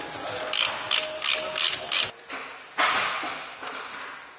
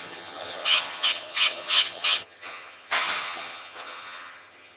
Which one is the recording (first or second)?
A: first